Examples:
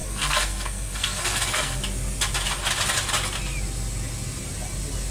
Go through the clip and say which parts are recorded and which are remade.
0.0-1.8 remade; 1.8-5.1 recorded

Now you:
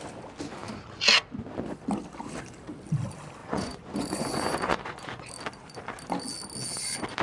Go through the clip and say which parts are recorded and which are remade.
0.0-3.4 recorded; 3.4-5.3 remade; 5.3-7.2 recorded

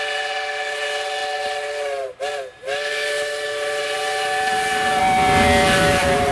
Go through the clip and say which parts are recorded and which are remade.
0.0-6.3 recorded

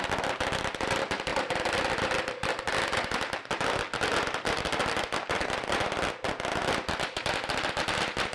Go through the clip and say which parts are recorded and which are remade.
0.0-8.3 recorded